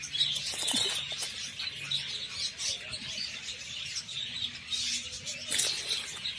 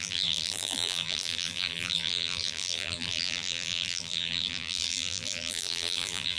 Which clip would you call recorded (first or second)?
first